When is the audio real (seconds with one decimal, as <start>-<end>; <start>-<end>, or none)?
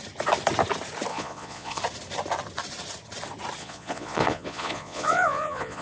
0.0-1.1; 1.8-3.6